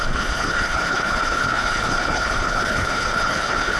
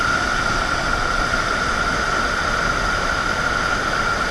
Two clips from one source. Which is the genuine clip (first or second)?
second